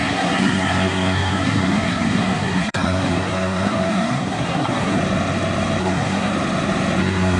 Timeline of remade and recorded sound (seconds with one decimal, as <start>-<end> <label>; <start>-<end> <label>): 0.0-5.0 remade; 5.0-5.8 recorded; 5.8-6.3 remade; 6.3-7.0 recorded; 7.0-7.4 remade